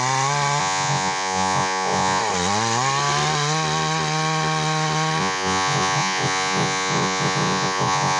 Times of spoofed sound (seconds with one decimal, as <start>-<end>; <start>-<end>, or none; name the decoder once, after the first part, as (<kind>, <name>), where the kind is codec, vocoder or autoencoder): 0.6-2.2 (vocoder, Vocos); 5.2-8.2